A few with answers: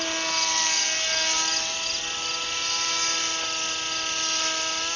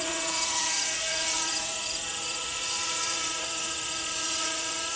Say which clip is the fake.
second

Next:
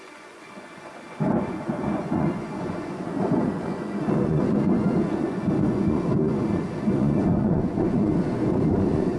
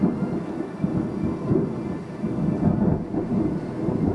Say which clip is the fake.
first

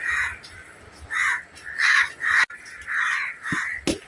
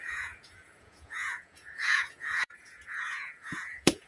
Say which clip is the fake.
second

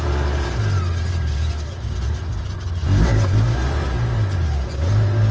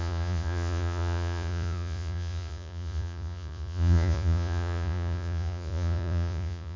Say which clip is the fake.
second